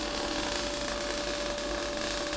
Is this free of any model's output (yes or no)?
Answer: yes